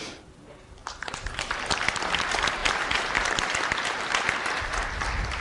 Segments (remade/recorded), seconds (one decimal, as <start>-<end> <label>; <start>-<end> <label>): 0.0-0.8 recorded; 0.8-1.7 remade; 1.7-2.6 recorded; 2.6-4.6 remade; 4.6-5.4 recorded